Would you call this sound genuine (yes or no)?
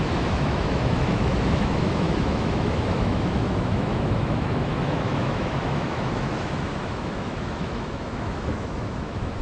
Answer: no